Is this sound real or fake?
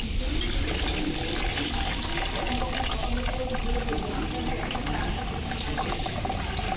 real